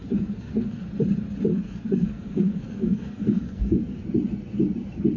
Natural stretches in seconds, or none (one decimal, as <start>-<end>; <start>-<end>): 0.9-1.5; 4.0-5.2